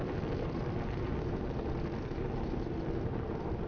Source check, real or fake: real